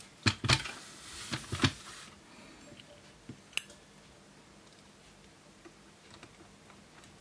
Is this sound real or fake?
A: real